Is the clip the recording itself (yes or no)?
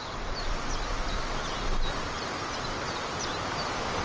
yes